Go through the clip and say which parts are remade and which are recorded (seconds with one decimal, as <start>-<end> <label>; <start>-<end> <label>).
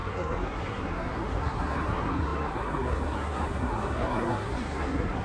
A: 0.0-5.2 remade